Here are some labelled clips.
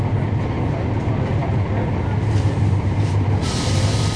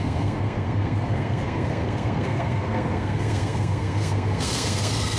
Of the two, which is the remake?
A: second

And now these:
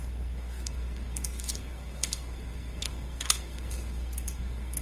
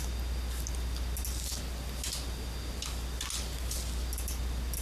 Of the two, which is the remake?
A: first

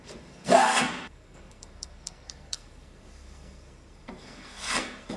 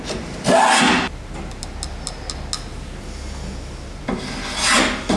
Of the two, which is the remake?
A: first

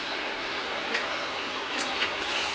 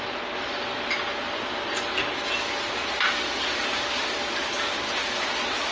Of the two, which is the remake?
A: first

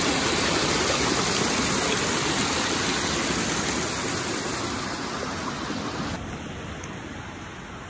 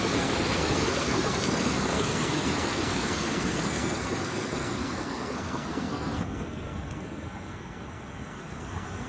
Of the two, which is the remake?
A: second